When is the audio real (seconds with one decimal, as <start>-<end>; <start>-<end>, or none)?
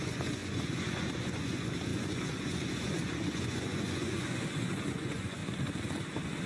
5.4-6.5